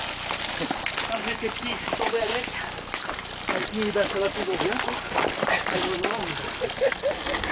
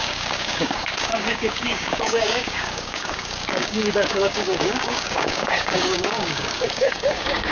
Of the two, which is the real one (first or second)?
first